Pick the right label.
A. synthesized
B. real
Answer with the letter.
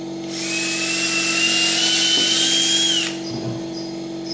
B